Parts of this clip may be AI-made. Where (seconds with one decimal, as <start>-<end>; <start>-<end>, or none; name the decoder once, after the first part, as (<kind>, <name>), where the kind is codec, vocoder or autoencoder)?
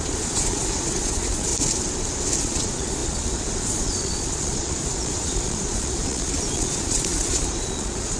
0.0-1.5 (vocoder, Vocos); 2.4-8.2